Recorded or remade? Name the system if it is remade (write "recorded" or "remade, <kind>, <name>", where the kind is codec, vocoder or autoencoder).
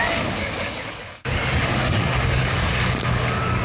remade, codec, DAC